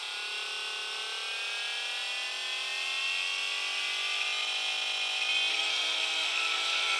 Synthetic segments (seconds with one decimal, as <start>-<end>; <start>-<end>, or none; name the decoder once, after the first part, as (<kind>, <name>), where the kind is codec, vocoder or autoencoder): 5.5-7.0 (codec, SNAC)

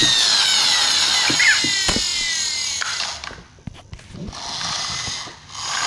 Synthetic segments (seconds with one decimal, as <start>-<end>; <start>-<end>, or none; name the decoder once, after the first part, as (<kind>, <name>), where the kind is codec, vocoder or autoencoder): none

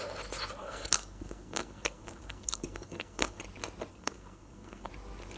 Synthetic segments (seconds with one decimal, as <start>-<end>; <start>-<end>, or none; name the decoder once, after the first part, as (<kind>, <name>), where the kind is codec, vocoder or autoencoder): 0.6-3.4 (codec, SNAC); 3.9-4.9

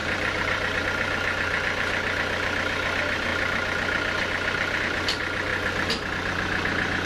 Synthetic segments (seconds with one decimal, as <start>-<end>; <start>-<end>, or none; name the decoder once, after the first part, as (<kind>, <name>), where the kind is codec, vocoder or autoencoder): 0.0-0.8 (vocoder, BigVGAN v2)

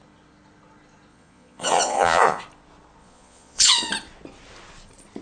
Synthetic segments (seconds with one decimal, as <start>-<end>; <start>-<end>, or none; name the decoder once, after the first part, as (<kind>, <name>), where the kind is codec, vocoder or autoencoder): 1.1-2.4 (vocoder, Vocos); 3.0-3.9

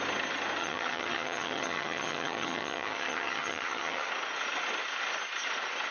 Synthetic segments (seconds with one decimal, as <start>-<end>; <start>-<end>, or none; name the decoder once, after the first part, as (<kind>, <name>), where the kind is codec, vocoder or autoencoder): 0.6-4.1 (vocoder, HiFi-GAN)

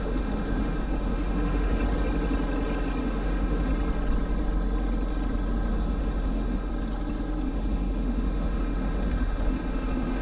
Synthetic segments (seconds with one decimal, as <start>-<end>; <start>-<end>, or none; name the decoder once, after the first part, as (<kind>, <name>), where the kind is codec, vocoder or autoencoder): 0.0-1.8 (autoencoder, DAC-VAE); 3.0-3.7; 5.7-6.7; 7.5-10.2

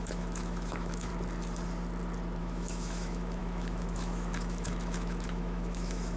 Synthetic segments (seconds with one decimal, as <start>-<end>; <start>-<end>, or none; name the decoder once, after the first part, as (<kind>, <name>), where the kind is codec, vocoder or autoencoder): 0.0-1.1 (autoencoder, DAC-VAE); 2.4-6.2